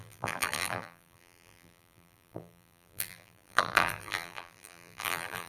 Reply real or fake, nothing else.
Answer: fake